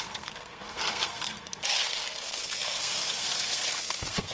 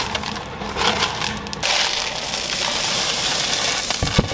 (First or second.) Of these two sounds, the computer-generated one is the first